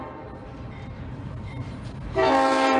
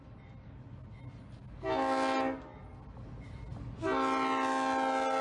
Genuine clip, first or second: second